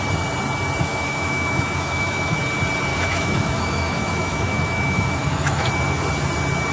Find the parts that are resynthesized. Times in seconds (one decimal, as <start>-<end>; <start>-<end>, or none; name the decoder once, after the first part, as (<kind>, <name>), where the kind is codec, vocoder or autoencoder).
0.9-2.4 (autoencoder, DAC-VAE); 2.9-5.7